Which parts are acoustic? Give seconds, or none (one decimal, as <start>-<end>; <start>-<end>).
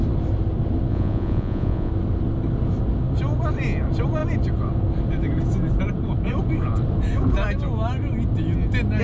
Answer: 0.0-0.9; 1.9-9.0